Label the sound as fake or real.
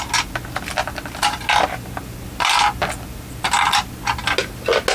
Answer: real